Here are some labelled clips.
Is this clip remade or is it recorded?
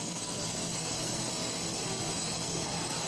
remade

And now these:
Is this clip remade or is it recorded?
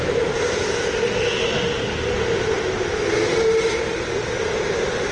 recorded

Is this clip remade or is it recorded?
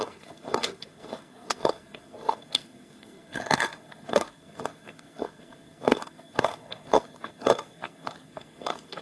remade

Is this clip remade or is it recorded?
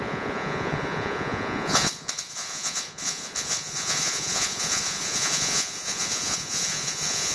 remade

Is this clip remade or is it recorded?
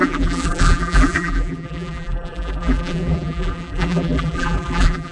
remade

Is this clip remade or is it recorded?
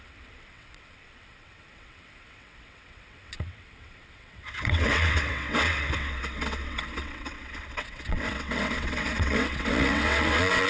remade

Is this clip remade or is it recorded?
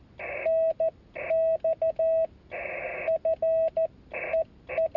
recorded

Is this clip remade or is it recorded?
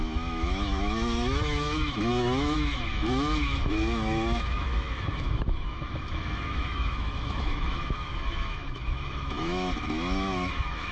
remade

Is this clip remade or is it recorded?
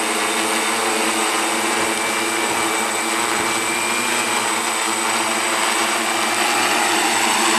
recorded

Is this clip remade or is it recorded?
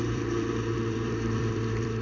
remade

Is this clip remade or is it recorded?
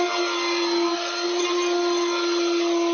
recorded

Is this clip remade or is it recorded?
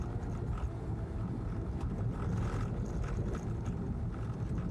recorded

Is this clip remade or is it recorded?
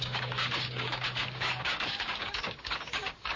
remade